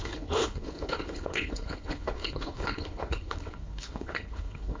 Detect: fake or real fake